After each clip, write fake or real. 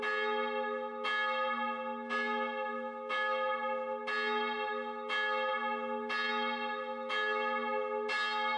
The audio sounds real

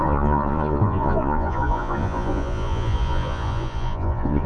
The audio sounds fake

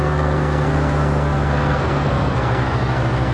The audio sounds fake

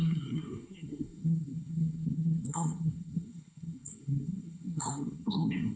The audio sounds fake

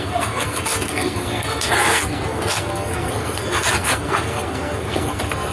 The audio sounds fake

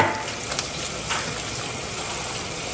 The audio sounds real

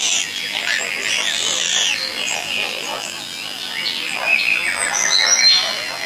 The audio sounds fake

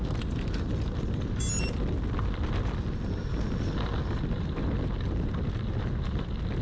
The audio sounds real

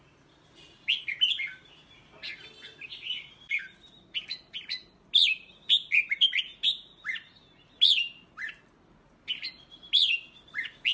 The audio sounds real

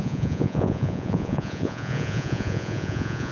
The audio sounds fake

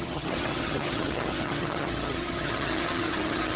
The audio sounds fake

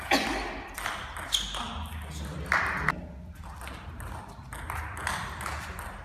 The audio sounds real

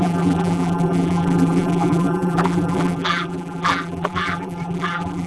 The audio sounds fake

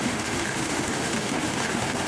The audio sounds fake